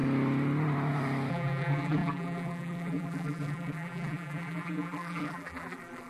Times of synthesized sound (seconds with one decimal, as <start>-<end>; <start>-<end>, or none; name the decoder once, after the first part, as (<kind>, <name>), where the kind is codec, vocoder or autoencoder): 1.3-6.1 (vocoder, BigVGAN v2)